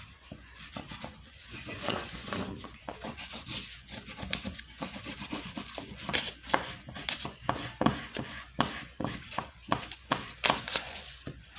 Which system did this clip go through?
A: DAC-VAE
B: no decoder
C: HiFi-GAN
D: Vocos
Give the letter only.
D